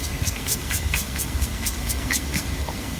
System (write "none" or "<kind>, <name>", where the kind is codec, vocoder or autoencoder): codec, SNAC